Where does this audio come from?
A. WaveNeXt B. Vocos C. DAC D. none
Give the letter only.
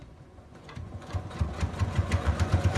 B